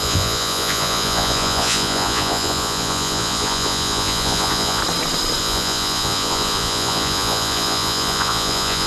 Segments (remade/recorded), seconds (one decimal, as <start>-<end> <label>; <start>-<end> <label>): 0.0-4.8 remade; 4.8-5.4 recorded; 5.4-8.9 remade

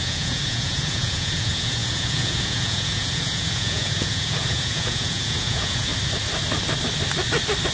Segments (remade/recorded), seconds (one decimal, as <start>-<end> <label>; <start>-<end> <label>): 0.0-5.9 remade; 5.9-7.7 recorded

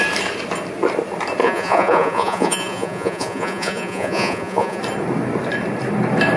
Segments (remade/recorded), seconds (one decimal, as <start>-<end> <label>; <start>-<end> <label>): 0.0-1.4 recorded; 1.4-4.8 remade; 4.8-6.4 recorded